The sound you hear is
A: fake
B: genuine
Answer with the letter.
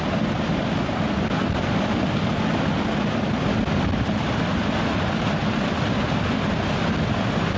B